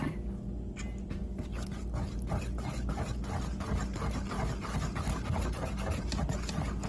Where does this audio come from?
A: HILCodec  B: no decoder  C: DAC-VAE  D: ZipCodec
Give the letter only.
B